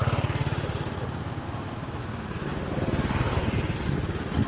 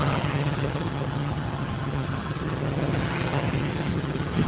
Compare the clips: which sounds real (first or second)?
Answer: first